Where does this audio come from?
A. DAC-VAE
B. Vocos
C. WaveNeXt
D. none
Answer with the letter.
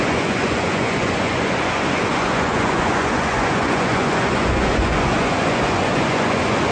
B